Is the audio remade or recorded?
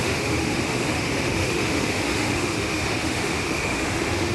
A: remade